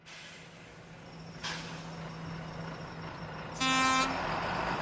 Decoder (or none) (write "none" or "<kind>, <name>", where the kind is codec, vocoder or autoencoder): none